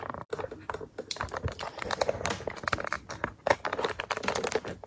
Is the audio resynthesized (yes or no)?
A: no